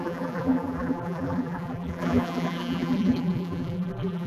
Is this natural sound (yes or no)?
no